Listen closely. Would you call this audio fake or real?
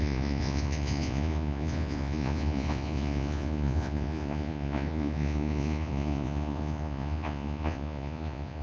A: fake